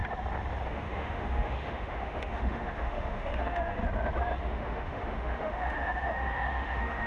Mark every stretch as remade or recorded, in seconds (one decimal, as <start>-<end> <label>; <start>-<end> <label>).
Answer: 0.0-0.7 recorded; 0.7-3.8 remade; 3.8-4.4 recorded; 4.4-7.1 remade